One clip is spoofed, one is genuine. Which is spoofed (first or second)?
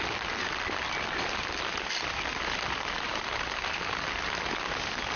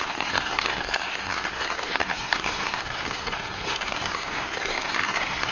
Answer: second